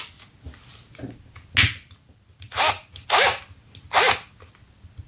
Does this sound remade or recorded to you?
recorded